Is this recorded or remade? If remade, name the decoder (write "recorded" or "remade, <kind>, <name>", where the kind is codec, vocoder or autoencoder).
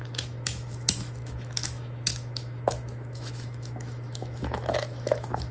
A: remade, autoencoder, DAC-VAE